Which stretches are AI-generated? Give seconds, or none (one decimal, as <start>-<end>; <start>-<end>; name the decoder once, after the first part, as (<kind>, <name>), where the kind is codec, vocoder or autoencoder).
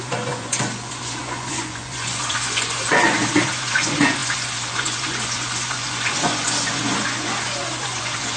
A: 0.0-8.4 (vocoder, Vocos)